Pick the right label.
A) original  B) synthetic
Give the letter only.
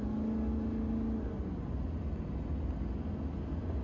A